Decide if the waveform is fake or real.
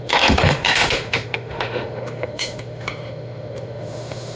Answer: fake